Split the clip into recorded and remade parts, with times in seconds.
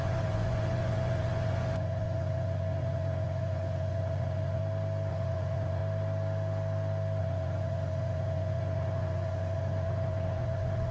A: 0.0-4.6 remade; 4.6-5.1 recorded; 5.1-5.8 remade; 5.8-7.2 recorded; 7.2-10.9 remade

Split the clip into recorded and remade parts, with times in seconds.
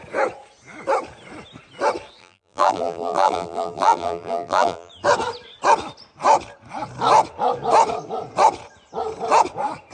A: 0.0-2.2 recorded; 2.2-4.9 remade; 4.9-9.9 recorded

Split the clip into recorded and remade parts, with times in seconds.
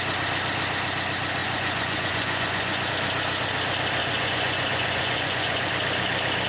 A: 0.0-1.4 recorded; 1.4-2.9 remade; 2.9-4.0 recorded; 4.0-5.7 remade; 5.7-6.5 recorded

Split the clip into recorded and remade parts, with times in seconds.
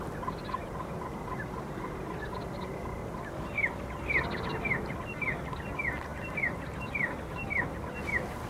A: 0.0-3.0 recorded; 3.0-3.8 remade; 3.8-6.1 recorded; 6.1-7.2 remade; 7.2-8.5 recorded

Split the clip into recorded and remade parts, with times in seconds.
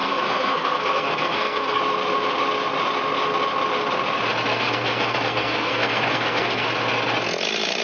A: 0.0-1.8 remade; 1.8-4.5 recorded; 4.5-6.7 remade; 6.7-7.8 recorded